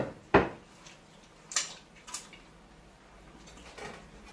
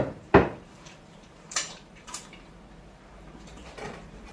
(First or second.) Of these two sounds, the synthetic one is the second